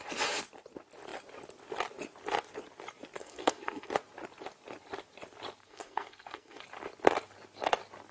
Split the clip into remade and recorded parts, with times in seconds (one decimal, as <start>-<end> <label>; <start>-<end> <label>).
0.0-3.2 recorded; 3.2-3.9 remade; 3.9-5.6 recorded; 5.6-6.6 remade; 6.6-8.1 recorded